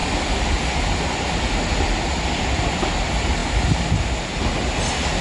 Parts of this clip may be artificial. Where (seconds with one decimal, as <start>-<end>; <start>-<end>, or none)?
none